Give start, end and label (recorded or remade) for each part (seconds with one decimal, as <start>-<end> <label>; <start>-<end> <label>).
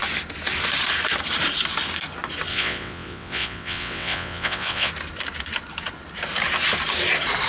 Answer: 0.0-2.5 recorded; 2.5-4.9 remade; 4.9-7.5 recorded